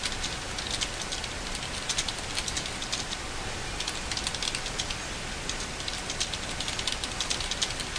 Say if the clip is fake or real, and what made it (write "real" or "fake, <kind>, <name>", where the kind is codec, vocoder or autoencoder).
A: real